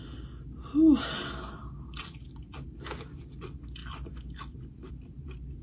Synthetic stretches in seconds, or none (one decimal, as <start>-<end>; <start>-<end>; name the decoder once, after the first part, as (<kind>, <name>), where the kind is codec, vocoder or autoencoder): none